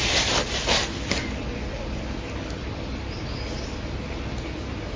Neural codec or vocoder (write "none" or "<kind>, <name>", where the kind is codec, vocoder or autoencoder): none